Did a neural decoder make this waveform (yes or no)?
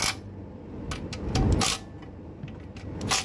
no